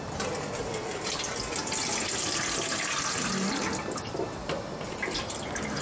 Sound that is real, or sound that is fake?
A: real